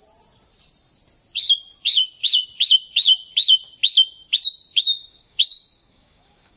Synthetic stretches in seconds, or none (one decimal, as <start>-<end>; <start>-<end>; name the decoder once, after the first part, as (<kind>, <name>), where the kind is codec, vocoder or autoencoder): 4.7-6.6 (codec, DAC)